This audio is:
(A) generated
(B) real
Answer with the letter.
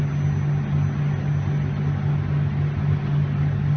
B